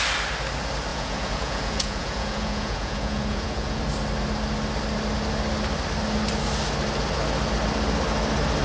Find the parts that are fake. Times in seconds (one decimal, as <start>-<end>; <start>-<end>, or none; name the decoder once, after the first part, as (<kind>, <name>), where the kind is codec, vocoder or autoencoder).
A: 0.9-3.8 (vocoder, Vocos)